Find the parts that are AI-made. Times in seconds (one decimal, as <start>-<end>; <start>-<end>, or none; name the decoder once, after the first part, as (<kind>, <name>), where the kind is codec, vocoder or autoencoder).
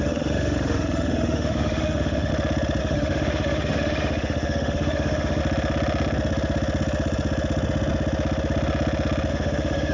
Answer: 0.0-2.3 (autoencoder, DAC-VAE); 2.8-5.4; 9.3-9.9